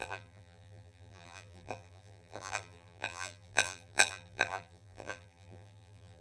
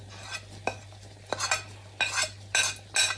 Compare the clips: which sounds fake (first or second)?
first